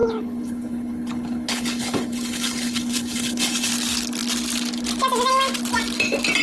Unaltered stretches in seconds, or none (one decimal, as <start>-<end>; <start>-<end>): 3.7-6.4